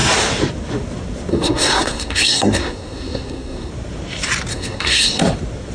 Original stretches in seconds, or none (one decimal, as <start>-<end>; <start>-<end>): 0.0-1.3; 3.7-4.5; 5.2-5.7